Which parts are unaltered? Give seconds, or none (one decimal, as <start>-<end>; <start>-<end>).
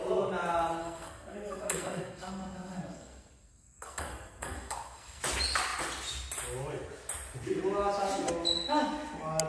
0.0-0.8; 5.2-9.5